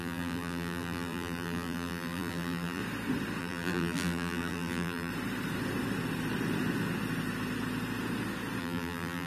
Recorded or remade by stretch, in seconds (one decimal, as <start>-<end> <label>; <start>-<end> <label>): 0.0-2.8 remade; 2.8-3.4 recorded; 3.4-5.1 remade; 5.1-8.6 recorded; 8.6-9.3 remade